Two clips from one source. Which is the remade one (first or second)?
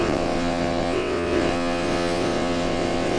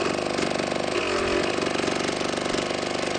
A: first